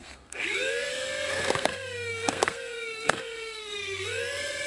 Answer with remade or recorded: remade